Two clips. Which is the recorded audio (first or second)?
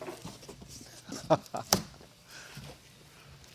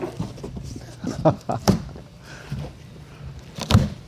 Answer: first